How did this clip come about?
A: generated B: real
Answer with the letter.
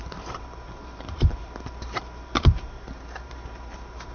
A